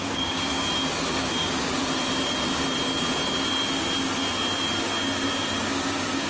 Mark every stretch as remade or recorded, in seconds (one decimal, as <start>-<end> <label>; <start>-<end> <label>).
0.0-0.5 remade; 0.5-1.0 recorded; 1.0-1.8 remade; 1.8-5.6 recorded; 5.6-6.3 remade